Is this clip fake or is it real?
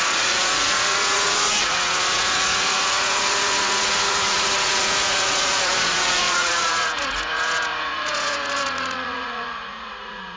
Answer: fake